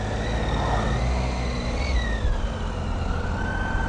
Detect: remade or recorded recorded